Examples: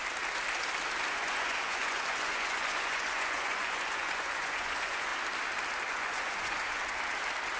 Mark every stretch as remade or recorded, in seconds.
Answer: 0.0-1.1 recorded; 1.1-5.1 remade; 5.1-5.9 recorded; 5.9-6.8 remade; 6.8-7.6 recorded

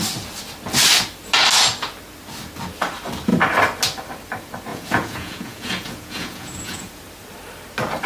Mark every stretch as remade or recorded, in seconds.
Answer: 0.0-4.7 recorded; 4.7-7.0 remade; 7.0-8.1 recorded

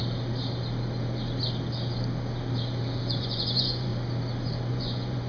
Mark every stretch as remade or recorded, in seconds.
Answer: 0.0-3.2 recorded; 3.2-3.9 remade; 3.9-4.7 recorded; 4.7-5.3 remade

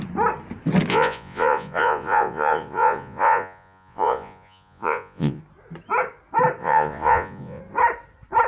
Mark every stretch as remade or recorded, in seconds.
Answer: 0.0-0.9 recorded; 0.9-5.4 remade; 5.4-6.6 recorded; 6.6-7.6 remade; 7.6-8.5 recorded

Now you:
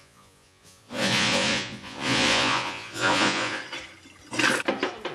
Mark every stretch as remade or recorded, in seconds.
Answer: 0.0-3.6 remade; 3.6-5.1 recorded

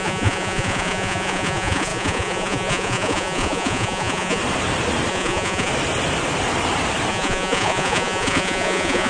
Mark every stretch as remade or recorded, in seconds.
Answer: 0.0-4.4 remade; 4.4-5.1 recorded; 5.1-5.7 remade; 5.7-7.1 recorded; 7.1-9.1 remade

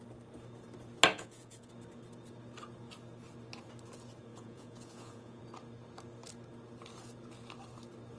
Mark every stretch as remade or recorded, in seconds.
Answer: 0.0-1.1 recorded; 1.1-1.7 remade; 1.7-4.3 recorded; 4.3-5.4 remade; 5.4-8.2 recorded

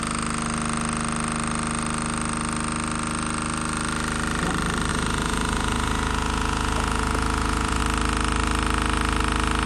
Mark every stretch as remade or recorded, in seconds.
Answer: 0.0-4.9 recorded; 4.9-7.8 remade; 7.8-9.7 recorded